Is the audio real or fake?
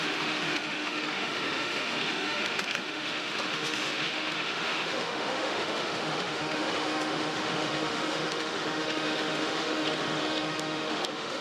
fake